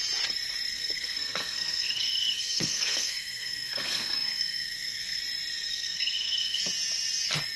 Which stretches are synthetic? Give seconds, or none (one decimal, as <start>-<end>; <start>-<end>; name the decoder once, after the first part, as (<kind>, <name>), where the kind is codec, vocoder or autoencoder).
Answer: 0.7-5.2 (codec, SNAC); 5.7-6.6